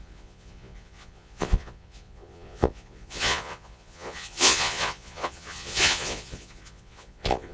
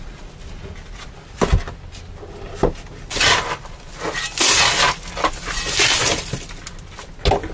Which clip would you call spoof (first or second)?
first